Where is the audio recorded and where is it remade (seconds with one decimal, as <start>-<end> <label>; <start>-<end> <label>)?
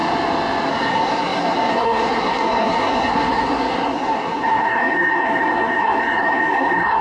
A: 0.0-0.7 recorded; 0.7-7.0 remade